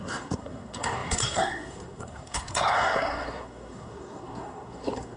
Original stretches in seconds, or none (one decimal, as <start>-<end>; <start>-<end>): none